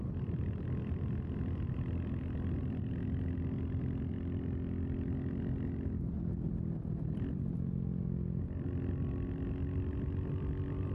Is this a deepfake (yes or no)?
no